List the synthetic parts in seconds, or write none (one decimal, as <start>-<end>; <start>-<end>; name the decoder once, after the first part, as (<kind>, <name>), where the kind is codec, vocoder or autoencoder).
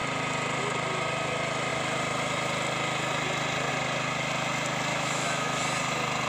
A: 4.9-5.6 (autoencoder, DAC-VAE)